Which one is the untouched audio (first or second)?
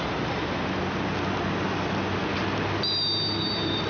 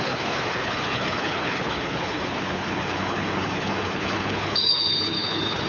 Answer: first